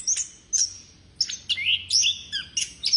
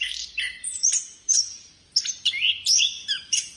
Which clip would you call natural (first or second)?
first